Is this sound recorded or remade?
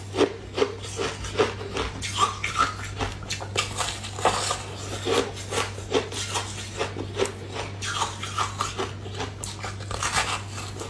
recorded